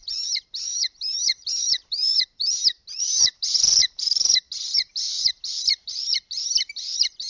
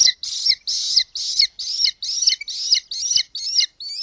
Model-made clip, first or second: first